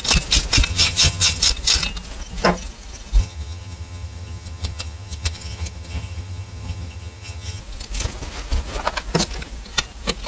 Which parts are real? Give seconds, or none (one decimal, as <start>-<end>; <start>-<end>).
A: 0.0-0.7; 1.4-3.2; 7.6-10.3